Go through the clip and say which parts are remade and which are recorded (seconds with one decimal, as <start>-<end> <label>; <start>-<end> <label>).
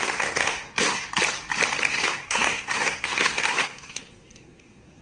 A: 0.0-1.1 remade; 1.1-1.9 recorded; 1.9-5.0 remade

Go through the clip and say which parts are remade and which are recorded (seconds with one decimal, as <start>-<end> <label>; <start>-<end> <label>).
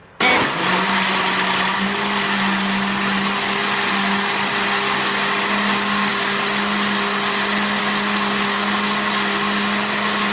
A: 0.0-10.3 recorded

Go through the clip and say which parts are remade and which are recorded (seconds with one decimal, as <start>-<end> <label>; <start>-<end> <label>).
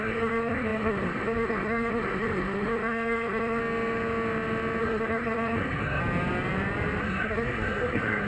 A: 0.0-3.6 remade; 3.6-4.8 recorded; 4.8-6.0 remade; 6.0-7.0 recorded; 7.0-8.3 remade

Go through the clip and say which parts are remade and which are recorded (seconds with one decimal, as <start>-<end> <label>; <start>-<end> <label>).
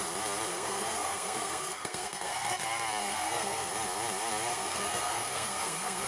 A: 0.0-0.5 recorded; 0.5-2.6 remade; 2.6-3.0 recorded; 3.0-3.7 remade; 3.7-4.5 recorded; 4.5-6.1 remade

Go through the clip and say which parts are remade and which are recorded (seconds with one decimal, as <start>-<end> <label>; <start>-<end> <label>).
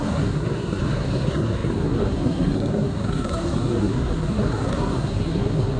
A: 0.0-5.8 remade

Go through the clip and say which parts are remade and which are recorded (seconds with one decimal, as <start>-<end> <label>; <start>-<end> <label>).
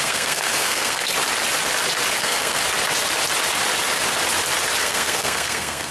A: 0.0-1.1 remade; 1.1-2.1 recorded; 2.1-2.6 remade; 2.6-4.8 recorded; 4.8-5.9 remade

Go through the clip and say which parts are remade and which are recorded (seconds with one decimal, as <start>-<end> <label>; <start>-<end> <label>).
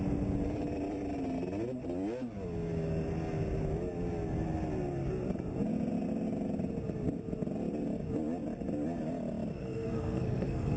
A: 0.0-9.6 recorded; 9.6-10.8 remade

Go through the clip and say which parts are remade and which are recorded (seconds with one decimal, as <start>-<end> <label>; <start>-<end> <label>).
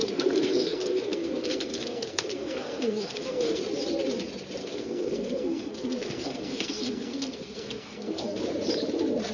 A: 0.0-3.6 remade; 3.6-4.6 recorded; 4.6-8.4 remade; 8.4-9.3 recorded